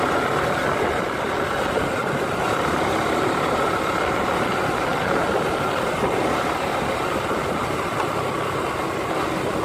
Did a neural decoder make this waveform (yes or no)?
no